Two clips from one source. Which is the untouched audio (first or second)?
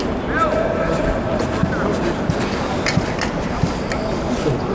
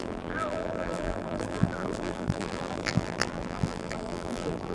first